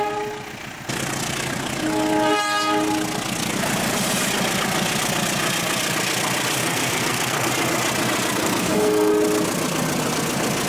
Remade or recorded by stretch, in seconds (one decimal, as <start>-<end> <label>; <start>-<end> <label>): 0.0-6.6 recorded; 6.6-7.5 remade; 7.5-8.4 recorded; 8.4-9.1 remade; 9.1-10.7 recorded